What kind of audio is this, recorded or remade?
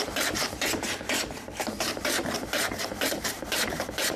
remade